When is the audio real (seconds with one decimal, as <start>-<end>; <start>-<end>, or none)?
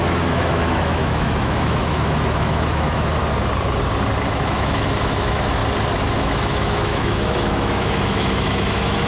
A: 3.2-4.3; 5.6-6.1